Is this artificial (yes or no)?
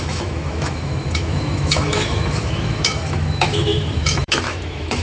yes